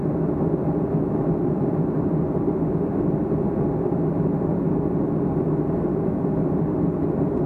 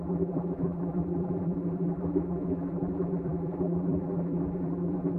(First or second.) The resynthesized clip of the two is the second